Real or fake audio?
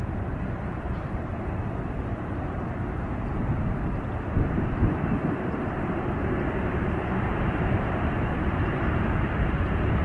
fake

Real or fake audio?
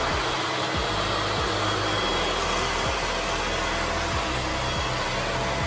real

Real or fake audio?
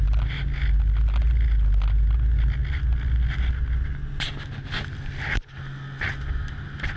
real